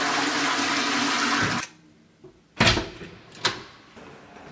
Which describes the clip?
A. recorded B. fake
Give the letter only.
A